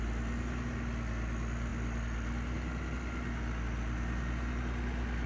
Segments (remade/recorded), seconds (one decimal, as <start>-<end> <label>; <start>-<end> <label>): 0.0-5.3 recorded